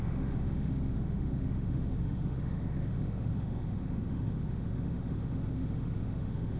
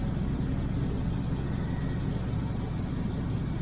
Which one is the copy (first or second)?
first